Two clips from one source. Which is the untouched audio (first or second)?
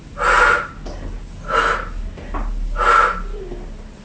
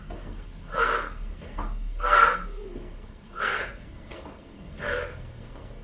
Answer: first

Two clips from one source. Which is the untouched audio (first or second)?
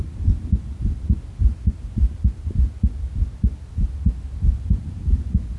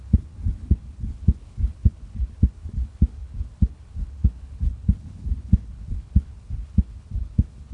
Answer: first